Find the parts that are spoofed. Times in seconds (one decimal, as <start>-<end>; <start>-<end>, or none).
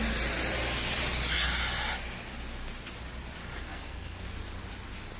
3.4-4.3